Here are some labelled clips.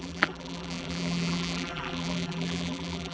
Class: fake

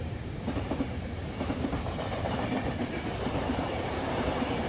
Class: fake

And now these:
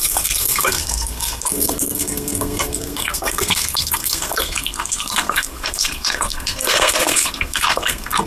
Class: fake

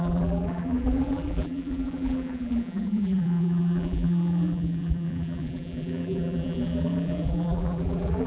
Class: fake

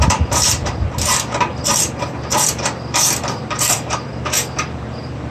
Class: fake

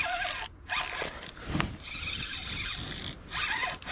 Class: real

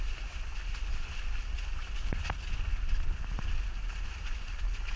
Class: real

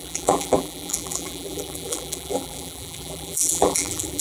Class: fake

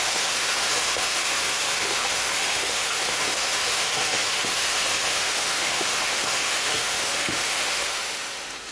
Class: fake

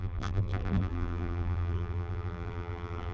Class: fake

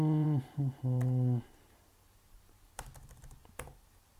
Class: fake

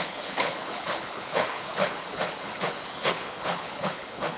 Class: fake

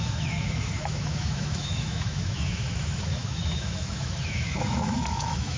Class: fake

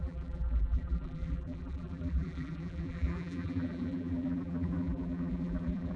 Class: fake